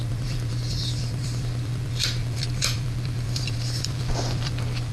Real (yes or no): no